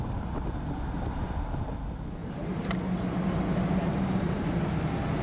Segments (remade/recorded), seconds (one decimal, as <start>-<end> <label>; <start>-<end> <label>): 0.0-2.2 recorded; 2.2-3.4 remade; 3.4-3.9 recorded; 3.9-4.4 remade; 4.4-5.2 recorded

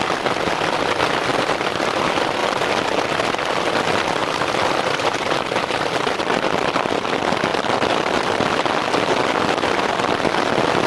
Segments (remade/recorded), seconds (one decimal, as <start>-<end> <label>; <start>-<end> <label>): 0.0-1.3 recorded; 1.3-2.0 remade; 2.0-4.2 recorded; 4.2-6.2 remade; 6.2-10.9 recorded

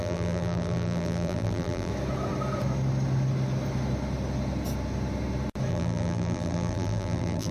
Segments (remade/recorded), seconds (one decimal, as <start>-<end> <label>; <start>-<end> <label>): 0.0-1.9 remade; 1.9-5.7 recorded; 5.7-7.5 remade

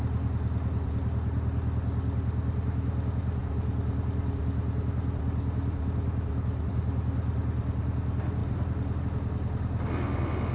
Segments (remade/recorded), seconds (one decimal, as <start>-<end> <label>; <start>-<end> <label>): 0.0-10.5 recorded

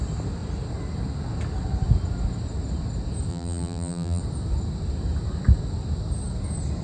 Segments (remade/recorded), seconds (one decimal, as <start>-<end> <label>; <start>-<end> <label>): 0.0-3.3 recorded; 3.3-4.2 remade; 4.2-6.8 recorded

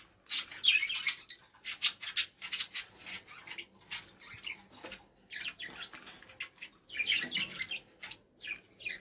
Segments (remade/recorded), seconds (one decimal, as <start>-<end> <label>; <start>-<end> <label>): 0.0-9.0 recorded

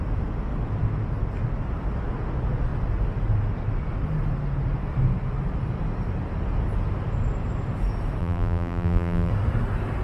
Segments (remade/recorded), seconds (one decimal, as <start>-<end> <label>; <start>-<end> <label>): 0.0-8.2 recorded; 8.2-9.3 remade; 9.3-10.0 recorded